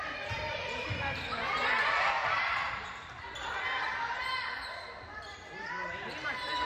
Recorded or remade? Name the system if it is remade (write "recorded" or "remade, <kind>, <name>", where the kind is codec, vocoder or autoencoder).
remade, vocoder, BigVGAN v2